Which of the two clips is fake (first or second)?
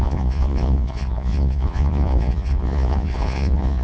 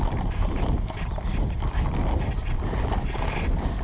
first